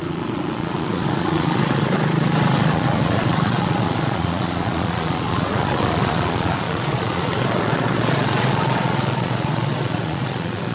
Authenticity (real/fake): fake